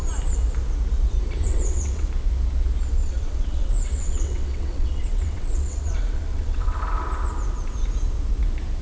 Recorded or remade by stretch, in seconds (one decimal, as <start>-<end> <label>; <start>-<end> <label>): 0.0-1.4 recorded; 1.4-2.1 remade; 2.1-3.0 recorded; 3.0-6.8 remade; 6.8-8.8 recorded